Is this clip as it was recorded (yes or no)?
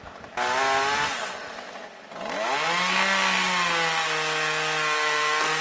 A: yes